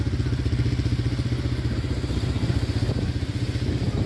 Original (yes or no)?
yes